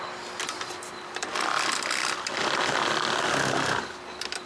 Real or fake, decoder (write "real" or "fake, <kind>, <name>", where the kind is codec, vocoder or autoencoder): real